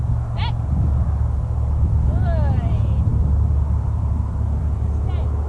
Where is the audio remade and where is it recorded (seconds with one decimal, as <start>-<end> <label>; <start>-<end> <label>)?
0.0-5.5 recorded